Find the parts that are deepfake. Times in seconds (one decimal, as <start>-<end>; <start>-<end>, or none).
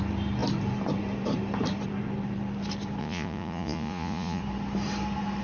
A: 3.0-4.4